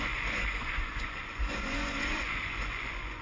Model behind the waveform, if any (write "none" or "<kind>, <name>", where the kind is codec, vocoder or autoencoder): vocoder, Vocos